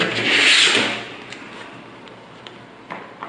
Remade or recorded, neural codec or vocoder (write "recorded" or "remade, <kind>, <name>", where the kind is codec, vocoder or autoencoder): recorded